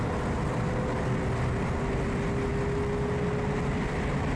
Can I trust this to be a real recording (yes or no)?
yes